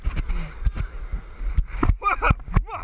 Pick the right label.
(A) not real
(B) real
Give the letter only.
B